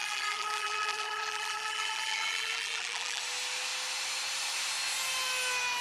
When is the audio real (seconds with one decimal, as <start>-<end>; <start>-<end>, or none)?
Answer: 3.2-5.8